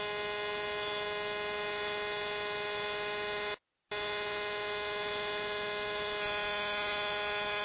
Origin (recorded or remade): recorded